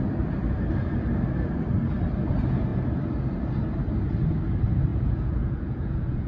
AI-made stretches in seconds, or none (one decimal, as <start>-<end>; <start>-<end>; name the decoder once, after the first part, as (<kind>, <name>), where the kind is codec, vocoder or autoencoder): 4.9-6.3 (vocoder, Vocos)